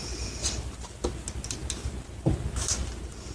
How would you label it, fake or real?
real